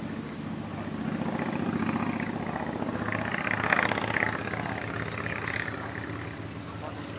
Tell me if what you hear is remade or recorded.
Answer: recorded